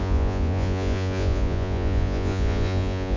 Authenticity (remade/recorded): remade